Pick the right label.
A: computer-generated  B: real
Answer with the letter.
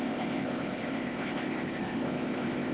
A